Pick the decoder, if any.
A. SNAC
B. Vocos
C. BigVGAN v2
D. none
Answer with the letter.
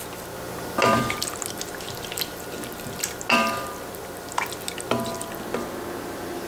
D